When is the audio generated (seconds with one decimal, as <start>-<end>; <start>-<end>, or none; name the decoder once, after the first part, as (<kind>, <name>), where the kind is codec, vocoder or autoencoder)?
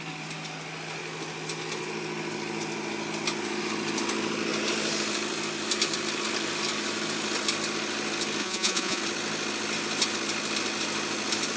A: 8.4-9.0 (vocoder, Vocos)